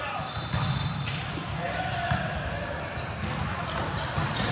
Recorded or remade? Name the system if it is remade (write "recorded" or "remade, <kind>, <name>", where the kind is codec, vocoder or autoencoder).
recorded